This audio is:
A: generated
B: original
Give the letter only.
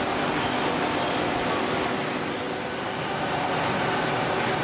B